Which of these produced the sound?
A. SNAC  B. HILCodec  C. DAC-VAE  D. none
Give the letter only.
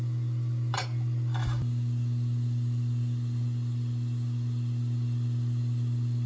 D